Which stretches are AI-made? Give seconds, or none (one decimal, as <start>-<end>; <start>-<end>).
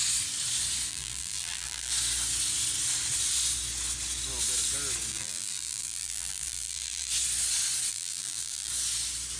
0.9-1.9; 5.1-7.1; 7.9-8.7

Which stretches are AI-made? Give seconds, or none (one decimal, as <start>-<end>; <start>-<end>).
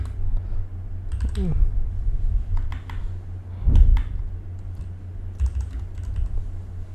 none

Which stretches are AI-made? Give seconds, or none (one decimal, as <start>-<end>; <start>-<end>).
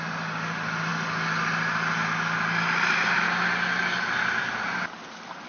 none